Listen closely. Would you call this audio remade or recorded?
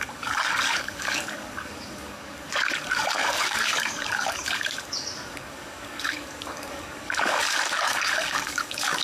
remade